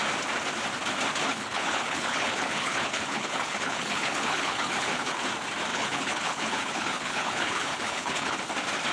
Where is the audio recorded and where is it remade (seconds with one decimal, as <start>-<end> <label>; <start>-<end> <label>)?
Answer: 0.0-1.3 recorded; 1.3-5.2 remade; 5.2-5.7 recorded; 5.7-8.4 remade; 8.4-8.9 recorded